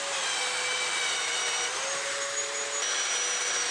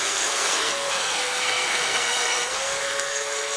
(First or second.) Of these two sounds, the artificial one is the second